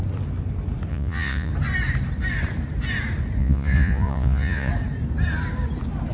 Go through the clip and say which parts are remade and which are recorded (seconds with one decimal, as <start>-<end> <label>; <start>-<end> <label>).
0.0-0.9 recorded; 0.9-1.5 remade; 1.5-3.4 recorded; 3.4-4.7 remade; 4.7-6.1 recorded